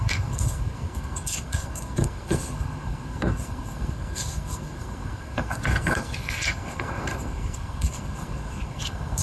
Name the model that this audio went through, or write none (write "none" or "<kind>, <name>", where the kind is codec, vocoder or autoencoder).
codec, SNAC